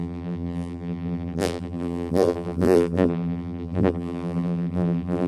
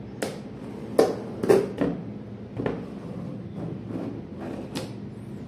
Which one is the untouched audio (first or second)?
second